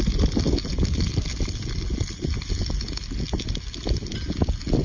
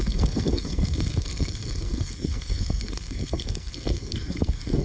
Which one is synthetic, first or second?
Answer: second